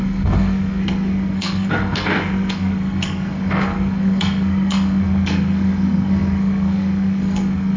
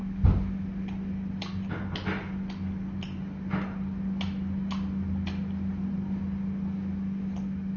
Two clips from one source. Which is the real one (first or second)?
second